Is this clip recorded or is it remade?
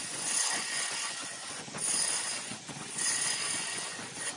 remade